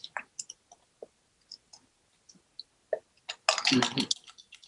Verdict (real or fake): real